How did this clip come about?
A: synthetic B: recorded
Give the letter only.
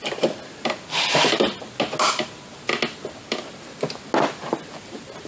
B